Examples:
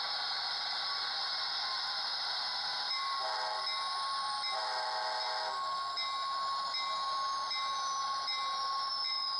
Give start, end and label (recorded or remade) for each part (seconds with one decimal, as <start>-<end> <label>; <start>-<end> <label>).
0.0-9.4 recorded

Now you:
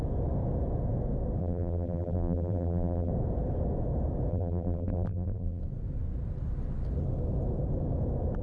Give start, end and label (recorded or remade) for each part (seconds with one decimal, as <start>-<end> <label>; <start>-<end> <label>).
0.0-1.4 recorded; 1.4-3.1 remade; 3.1-4.3 recorded; 4.3-5.6 remade; 5.6-8.4 recorded

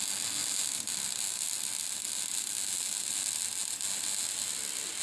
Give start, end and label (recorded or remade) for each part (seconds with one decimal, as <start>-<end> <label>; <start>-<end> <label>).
0.0-5.0 recorded

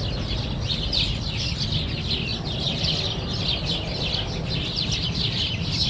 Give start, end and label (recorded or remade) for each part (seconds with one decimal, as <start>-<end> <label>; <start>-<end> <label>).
0.0-5.9 recorded

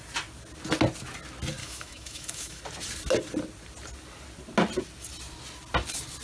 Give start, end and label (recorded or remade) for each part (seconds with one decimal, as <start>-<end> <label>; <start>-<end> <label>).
0.0-1.6 recorded; 1.6-2.6 remade; 2.6-6.2 recorded

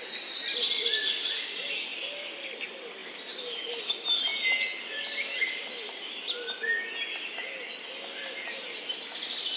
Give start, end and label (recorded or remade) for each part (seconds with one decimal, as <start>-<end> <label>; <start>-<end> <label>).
0.0-9.6 recorded